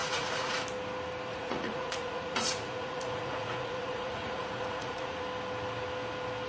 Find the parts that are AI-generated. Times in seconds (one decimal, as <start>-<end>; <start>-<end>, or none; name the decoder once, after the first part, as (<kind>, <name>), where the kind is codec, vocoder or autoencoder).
0.0-0.6 (vocoder, Vocos); 1.3-5.2